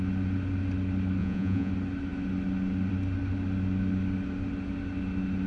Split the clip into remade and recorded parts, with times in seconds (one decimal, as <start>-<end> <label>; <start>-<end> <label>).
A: 0.0-1.2 recorded; 1.2-1.7 remade; 1.7-5.5 recorded